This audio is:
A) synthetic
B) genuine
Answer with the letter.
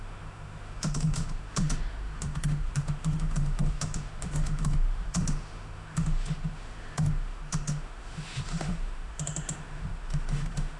A